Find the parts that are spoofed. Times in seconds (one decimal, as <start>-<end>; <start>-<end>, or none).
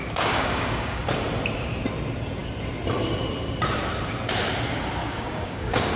0.0-1.0; 5.0-6.0